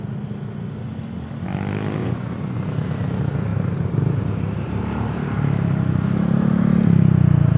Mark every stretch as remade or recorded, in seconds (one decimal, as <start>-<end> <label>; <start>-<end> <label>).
0.0-2.0 recorded; 2.0-2.6 remade; 2.6-7.6 recorded